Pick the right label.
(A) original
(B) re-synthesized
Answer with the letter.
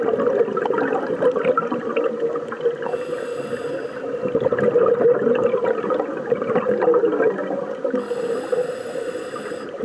A